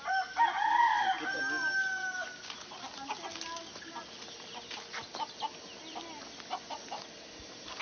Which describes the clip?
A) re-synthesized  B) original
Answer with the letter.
B